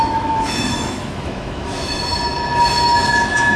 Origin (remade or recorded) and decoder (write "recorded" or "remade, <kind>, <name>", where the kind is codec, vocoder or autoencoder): remade, autoencoder, DAC-VAE